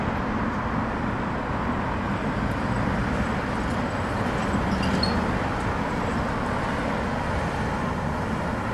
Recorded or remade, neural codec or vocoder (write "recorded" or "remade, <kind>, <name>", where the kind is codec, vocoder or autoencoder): recorded